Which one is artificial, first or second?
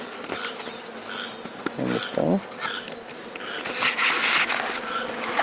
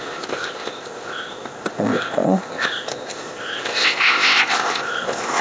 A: second